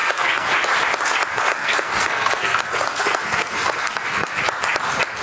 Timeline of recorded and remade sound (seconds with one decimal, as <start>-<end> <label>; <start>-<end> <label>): 0.0-0.5 remade; 0.5-1.3 recorded; 1.3-4.4 remade; 4.4-5.2 recorded